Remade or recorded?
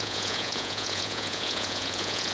remade